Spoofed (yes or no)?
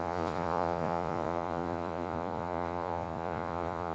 yes